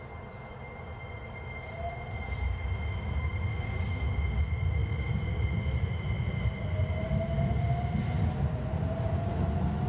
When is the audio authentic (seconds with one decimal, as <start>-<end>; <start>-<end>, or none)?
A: 0.0-9.9